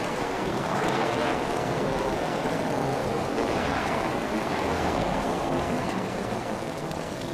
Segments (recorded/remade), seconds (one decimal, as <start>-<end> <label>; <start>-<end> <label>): 0.0-7.3 remade